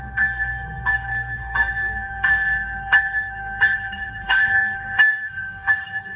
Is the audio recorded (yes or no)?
no